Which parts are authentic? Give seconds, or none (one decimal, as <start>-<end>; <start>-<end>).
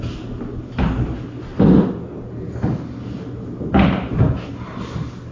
0.0-5.3